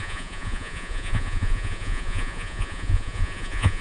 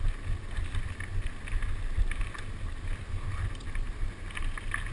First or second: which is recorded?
second